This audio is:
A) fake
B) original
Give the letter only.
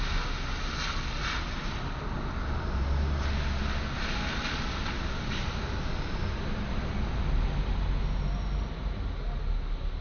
B